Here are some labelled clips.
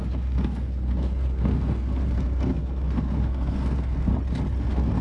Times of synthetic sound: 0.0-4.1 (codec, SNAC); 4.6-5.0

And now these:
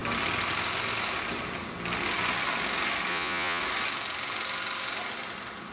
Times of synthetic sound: 3.1-3.6 (vocoder, Vocos)

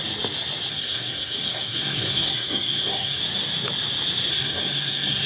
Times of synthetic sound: 0.7-3.2 (codec, SNAC); 4.3-5.3

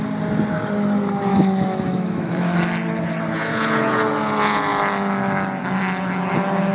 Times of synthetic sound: 1.3-2.6 (autoencoder, DAC-VAE)

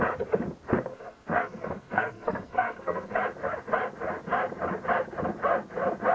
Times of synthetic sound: 0.9-3.1 (codec, SNAC)

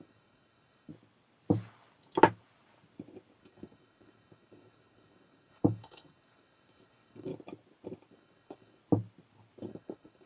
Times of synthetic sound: 0.0-0.9 (codec, DAC); 3.4-7.3; 8.1-8.8; 9.6-10.3